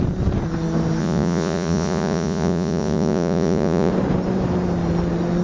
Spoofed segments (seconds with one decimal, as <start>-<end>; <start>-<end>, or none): 1.0-3.9